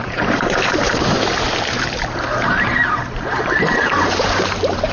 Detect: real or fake fake